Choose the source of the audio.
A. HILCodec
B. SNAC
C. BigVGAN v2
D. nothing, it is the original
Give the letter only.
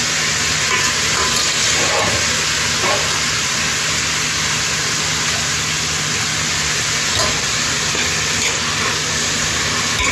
D